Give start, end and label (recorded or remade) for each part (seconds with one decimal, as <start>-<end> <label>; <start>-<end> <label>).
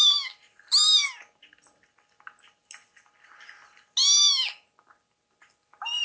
0.0-6.0 recorded